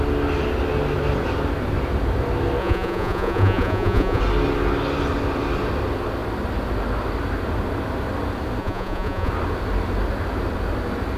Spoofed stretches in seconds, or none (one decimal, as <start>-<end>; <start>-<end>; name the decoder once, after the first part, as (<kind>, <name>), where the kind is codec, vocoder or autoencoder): 2.6-4.2 (vocoder, Vocos); 8.6-9.3